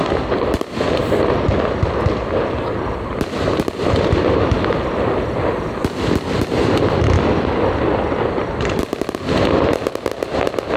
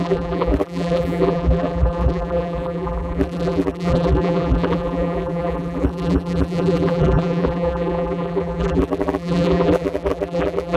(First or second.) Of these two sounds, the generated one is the second